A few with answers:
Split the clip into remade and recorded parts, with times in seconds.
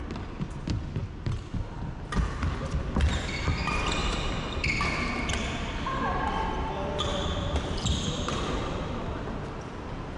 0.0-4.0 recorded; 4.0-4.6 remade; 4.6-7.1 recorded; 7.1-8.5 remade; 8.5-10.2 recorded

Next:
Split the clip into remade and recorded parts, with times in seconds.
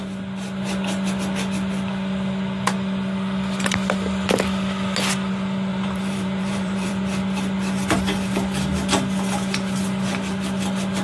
0.0-5.7 recorded; 5.7-6.9 remade; 6.9-11.0 recorded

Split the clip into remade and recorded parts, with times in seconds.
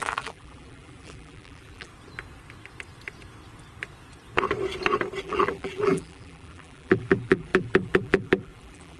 0.0-1.9 remade; 1.9-5.2 recorded; 5.2-9.0 remade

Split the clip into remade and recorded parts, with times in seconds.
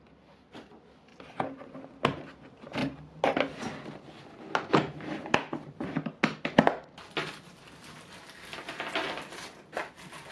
0.0-10.3 recorded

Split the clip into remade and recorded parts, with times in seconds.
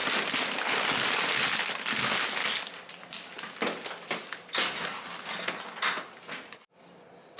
0.0-7.4 recorded